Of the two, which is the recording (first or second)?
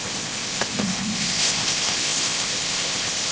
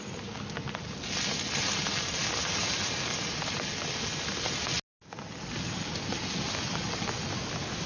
second